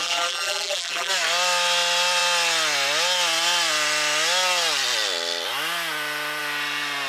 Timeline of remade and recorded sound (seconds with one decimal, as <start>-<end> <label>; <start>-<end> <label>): 0.0-1.1 remade; 1.1-7.1 recorded